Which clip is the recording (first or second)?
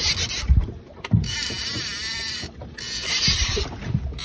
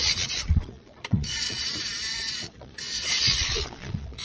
first